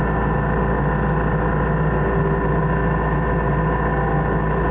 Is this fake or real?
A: real